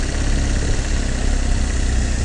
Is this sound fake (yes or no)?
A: no